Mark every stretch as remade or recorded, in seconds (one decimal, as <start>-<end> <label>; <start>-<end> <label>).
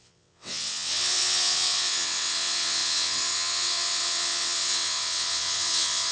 0.0-6.1 remade